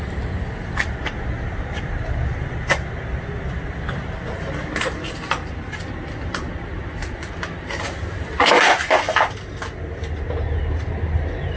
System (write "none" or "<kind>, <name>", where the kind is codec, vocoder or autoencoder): none